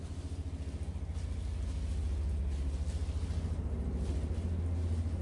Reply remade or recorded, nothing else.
recorded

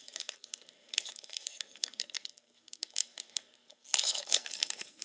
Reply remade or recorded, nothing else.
remade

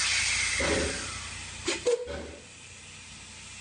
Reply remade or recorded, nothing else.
recorded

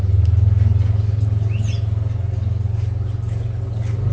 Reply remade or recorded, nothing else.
recorded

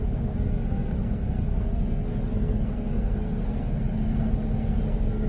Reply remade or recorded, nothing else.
remade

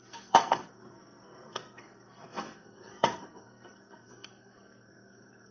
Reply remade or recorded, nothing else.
remade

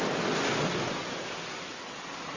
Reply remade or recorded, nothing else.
recorded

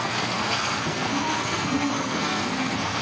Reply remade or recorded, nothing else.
remade